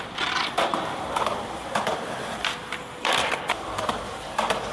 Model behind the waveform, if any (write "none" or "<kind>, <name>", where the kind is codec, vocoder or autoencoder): vocoder, BigVGAN v2